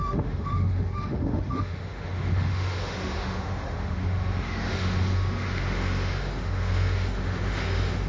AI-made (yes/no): yes